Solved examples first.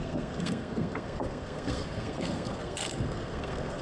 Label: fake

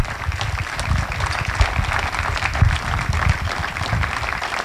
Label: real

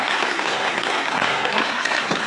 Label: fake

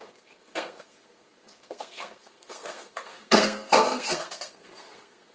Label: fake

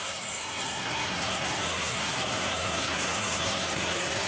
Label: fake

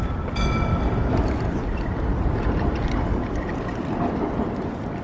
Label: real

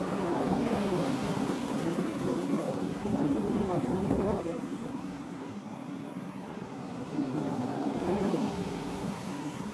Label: fake